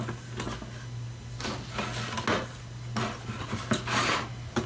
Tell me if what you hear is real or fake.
real